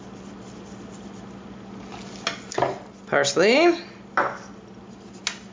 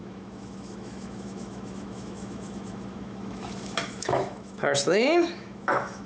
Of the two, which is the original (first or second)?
first